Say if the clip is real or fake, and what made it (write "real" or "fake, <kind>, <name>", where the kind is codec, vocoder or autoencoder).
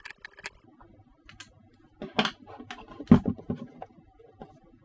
real